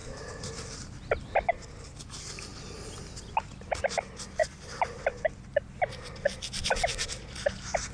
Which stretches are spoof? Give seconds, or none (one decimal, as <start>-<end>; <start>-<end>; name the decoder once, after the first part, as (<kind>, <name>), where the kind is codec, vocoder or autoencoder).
none